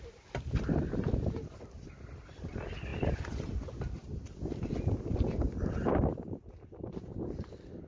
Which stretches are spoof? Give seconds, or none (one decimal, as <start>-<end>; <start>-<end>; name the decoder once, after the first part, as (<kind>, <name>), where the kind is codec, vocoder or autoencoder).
none